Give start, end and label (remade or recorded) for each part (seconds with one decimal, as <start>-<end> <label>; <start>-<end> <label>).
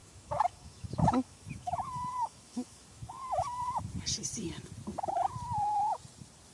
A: 0.0-3.8 remade; 3.8-6.5 recorded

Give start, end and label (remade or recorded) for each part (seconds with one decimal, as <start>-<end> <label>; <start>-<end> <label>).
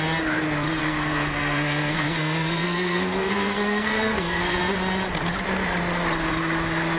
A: 0.0-0.8 recorded; 0.8-4.6 remade; 4.6-7.0 recorded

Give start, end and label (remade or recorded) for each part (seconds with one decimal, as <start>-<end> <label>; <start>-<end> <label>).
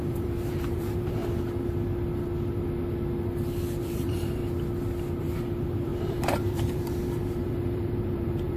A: 0.0-1.2 remade; 1.2-3.8 recorded; 3.8-4.4 remade; 4.4-5.2 recorded; 5.2-8.6 remade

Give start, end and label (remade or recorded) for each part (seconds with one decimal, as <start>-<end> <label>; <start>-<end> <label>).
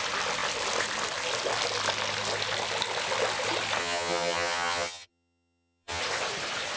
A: 0.0-3.8 recorded; 3.8-6.0 remade; 6.0-6.8 recorded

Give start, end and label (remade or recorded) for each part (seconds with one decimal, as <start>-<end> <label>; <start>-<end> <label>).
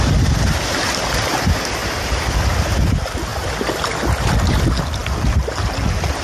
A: 0.0-6.2 recorded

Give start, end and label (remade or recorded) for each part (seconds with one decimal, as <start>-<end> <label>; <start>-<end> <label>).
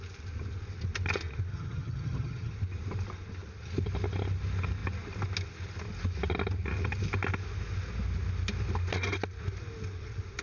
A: 0.0-1.5 recorded; 1.5-2.5 remade; 2.5-10.4 recorded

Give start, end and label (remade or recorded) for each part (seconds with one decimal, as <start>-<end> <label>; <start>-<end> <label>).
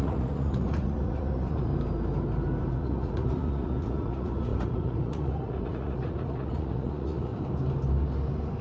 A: 0.0-1.7 remade; 1.7-2.7 recorded; 2.7-7.3 remade; 7.3-8.6 recorded